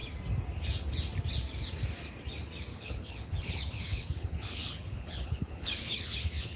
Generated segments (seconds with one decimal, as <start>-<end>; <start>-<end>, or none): 2.7-6.6

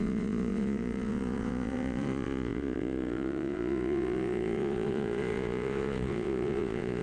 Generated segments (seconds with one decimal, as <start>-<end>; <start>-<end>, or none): 0.0-7.0

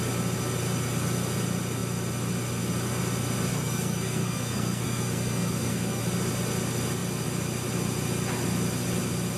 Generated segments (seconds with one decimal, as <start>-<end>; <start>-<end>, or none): 3.5-6.0